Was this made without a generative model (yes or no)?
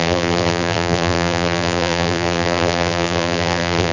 no